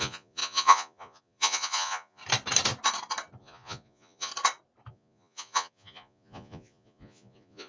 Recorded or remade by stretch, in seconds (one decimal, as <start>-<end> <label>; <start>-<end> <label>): 0.0-2.2 remade; 2.2-3.4 recorded; 3.4-4.3 remade; 4.3-4.9 recorded; 4.9-7.7 remade